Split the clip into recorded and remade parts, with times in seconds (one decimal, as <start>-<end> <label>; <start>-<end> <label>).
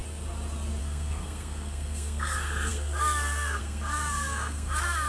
0.0-0.8 recorded; 0.8-5.1 remade